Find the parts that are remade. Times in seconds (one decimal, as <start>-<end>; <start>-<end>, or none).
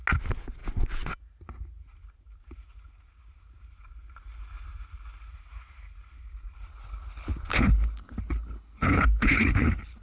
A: 6.7-10.0